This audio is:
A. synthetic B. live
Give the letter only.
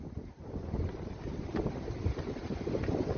B